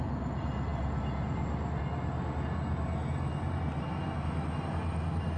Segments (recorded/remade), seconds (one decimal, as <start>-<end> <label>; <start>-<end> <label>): 0.0-5.4 recorded